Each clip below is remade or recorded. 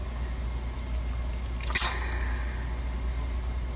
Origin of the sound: recorded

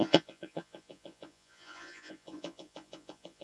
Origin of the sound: remade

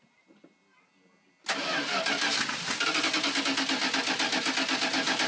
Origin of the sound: recorded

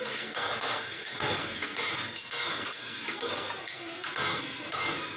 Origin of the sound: remade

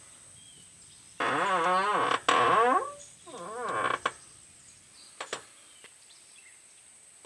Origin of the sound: recorded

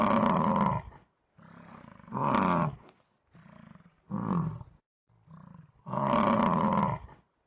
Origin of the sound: recorded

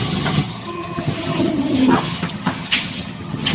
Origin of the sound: remade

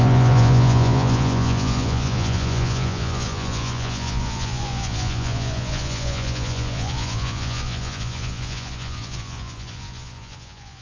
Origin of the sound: remade